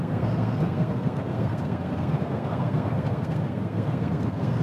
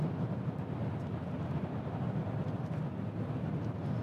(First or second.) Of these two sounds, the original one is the second